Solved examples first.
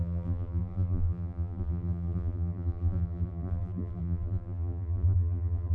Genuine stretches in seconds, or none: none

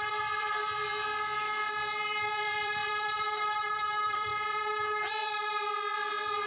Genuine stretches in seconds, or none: 0.9-1.6; 4.3-5.1

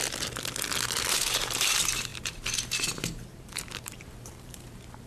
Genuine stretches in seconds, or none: 0.0-1.1